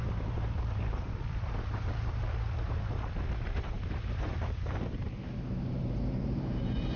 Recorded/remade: remade